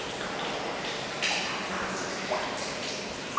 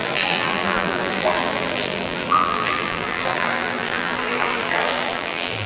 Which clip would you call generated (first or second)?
second